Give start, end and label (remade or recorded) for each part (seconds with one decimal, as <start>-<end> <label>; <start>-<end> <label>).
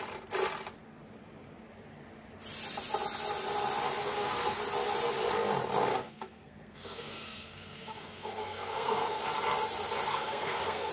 0.0-4.0 recorded; 4.0-4.6 remade; 4.6-5.9 recorded; 5.9-9.2 remade; 9.2-10.1 recorded; 10.1-10.9 remade